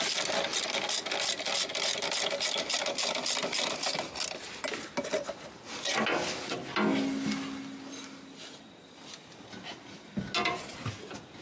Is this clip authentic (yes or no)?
yes